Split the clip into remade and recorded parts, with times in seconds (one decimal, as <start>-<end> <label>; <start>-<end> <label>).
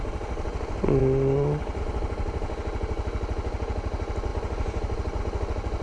0.0-1.0 recorded; 1.0-1.8 remade; 1.8-5.8 recorded